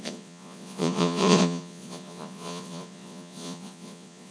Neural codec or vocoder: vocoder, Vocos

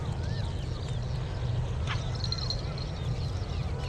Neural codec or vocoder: none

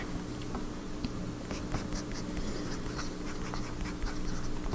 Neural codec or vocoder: none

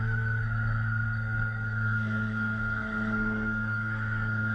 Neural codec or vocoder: codec, SNAC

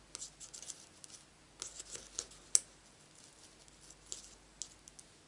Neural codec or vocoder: none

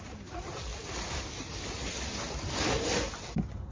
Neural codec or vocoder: none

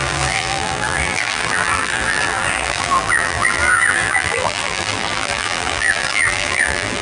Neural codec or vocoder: vocoder, BigVGAN v2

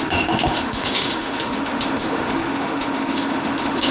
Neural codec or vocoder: autoencoder, DAC-VAE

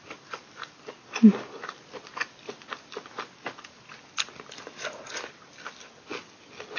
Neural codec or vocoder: none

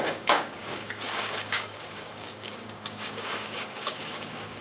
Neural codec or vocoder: codec, DAC